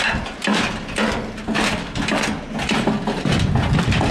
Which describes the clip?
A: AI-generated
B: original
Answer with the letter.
B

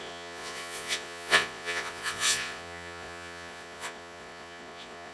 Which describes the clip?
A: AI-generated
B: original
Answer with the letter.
A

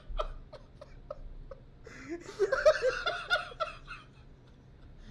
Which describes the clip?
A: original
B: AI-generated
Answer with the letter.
A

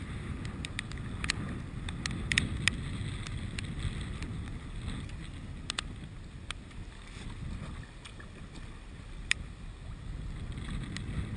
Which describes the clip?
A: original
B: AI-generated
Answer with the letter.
A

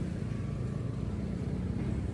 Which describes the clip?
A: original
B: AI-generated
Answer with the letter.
A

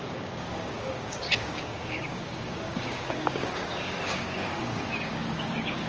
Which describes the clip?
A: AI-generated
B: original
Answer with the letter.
A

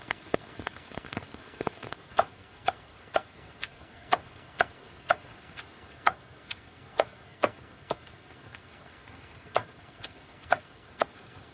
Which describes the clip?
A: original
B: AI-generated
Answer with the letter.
B